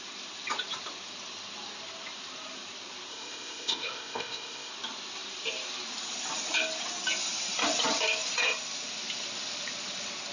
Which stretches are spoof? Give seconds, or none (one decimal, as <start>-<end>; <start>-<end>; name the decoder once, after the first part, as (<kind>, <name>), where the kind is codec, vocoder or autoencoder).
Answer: 3.1-4.7 (codec, ZipCodec)